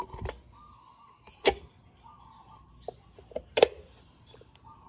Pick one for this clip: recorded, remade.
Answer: recorded